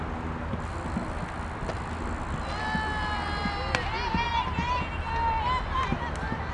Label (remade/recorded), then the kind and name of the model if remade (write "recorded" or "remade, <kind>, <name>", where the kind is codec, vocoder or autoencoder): recorded